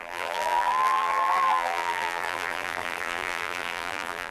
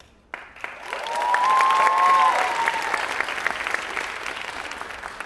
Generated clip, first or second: first